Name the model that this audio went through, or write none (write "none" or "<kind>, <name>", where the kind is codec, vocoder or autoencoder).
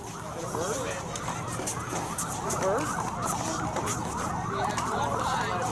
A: none